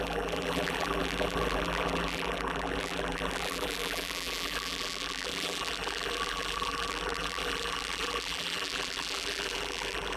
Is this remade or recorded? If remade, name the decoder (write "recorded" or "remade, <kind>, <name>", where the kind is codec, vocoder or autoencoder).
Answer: remade, vocoder, BigVGAN v2